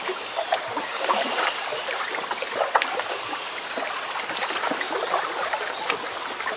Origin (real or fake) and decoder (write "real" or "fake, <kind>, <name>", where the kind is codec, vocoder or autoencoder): real